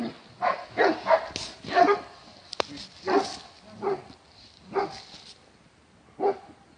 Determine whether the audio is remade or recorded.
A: recorded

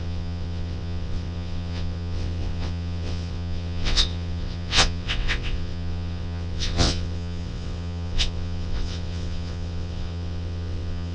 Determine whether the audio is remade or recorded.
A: remade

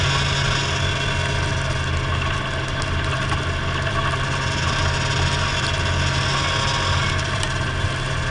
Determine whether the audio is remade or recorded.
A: recorded